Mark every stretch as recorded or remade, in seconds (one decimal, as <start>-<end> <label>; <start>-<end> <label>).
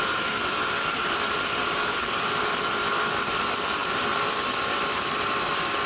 0.0-5.9 remade